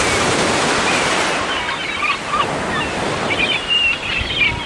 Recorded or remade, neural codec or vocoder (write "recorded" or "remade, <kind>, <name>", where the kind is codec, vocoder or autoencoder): recorded